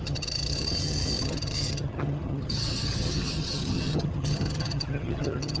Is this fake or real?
fake